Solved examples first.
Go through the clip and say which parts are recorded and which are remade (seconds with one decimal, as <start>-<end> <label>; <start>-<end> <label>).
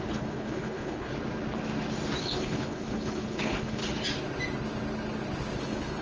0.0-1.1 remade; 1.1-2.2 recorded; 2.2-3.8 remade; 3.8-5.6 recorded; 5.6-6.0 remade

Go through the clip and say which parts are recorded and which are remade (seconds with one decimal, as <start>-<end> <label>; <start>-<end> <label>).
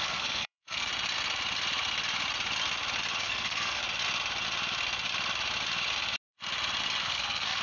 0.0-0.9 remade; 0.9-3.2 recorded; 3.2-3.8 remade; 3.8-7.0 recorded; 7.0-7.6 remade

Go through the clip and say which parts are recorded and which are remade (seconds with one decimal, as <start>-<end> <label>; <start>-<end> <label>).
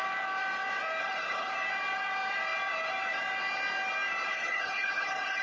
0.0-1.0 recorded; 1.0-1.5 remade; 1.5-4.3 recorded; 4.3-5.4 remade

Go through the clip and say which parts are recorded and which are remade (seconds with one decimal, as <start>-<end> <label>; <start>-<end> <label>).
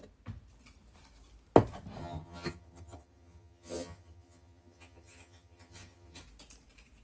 0.0-2.0 recorded; 2.0-6.2 remade; 6.2-7.0 recorded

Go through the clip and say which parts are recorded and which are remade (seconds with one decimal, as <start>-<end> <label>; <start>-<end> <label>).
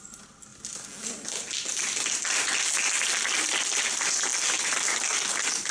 0.0-5.7 recorded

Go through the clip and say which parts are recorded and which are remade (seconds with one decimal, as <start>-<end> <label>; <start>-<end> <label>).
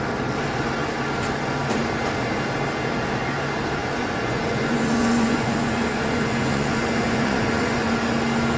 0.0-3.8 recorded; 3.8-7.9 remade; 7.9-8.6 recorded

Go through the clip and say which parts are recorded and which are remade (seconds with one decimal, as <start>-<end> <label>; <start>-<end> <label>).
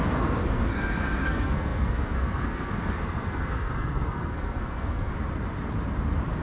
0.0-5.1 remade; 5.1-6.4 recorded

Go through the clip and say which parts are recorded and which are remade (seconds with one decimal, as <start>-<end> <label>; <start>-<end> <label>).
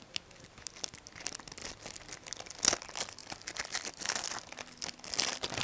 0.0-5.6 recorded